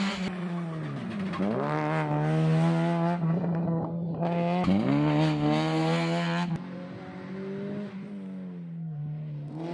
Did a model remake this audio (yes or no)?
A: no